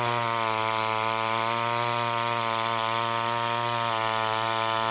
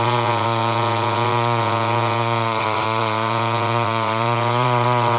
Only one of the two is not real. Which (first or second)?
second